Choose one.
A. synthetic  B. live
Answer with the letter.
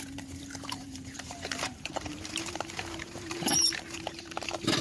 A